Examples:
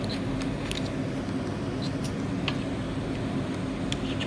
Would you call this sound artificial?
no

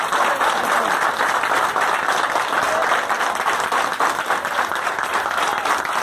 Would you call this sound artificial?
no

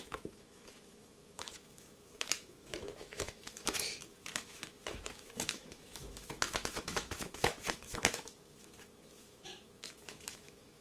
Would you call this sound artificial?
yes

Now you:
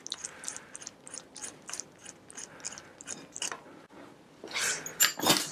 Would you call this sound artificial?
no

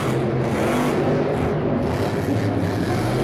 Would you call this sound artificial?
no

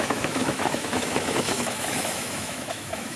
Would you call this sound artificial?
yes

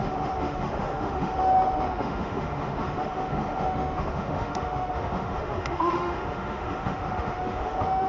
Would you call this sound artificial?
yes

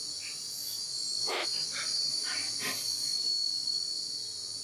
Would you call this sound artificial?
no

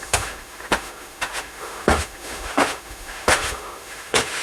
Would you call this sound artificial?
yes